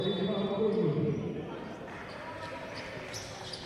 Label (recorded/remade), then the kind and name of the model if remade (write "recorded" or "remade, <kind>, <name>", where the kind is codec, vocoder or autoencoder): remade, vocoder, BigVGAN v2